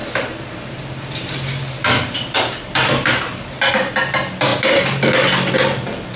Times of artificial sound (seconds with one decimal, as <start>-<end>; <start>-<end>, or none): 0.0-3.7